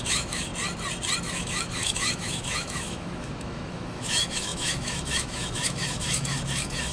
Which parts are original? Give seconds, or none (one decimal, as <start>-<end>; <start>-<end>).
0.5-1.2